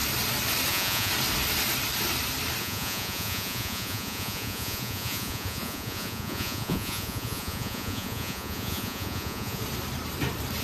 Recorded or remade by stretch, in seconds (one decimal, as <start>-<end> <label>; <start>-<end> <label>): 0.0-0.7 recorded; 0.7-1.1 remade; 1.1-2.6 recorded; 2.6-9.6 remade; 9.6-10.6 recorded

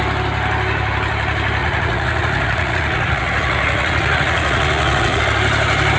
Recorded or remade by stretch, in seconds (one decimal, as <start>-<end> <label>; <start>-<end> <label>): 0.0-1.6 recorded; 1.6-5.2 remade; 5.2-6.0 recorded